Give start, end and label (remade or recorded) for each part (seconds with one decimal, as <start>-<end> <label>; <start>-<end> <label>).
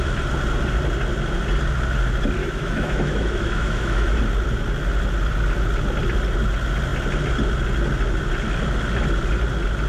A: 0.0-2.4 recorded; 2.4-4.2 remade; 4.2-9.9 recorded